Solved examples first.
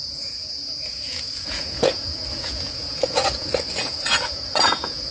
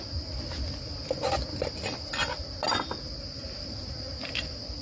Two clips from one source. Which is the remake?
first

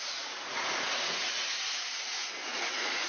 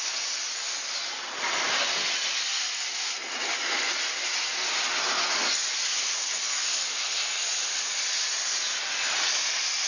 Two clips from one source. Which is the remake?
first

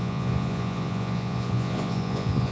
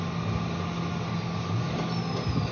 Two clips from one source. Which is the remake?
first